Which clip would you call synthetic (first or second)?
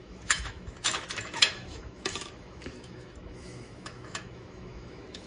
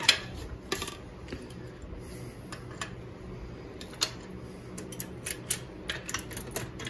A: first